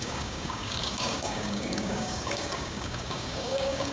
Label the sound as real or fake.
fake